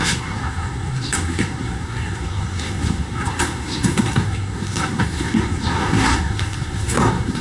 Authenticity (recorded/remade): remade